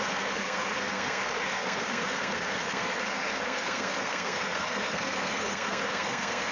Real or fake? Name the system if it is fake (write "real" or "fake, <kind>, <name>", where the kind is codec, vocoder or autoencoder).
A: fake, codec, SNAC